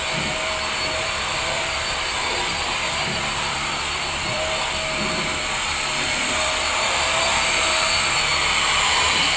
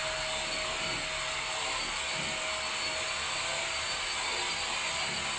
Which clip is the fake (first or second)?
first